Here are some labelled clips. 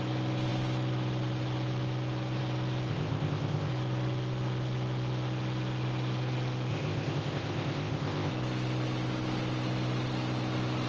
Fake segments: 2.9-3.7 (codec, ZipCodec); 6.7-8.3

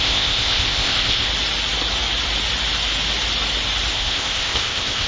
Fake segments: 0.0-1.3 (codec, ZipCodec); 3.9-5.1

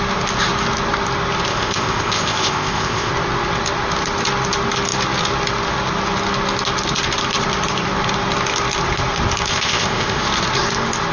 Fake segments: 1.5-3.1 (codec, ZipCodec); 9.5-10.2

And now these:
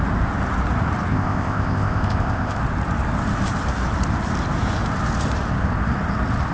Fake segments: 1.1-2.6 (codec, ZipCodec)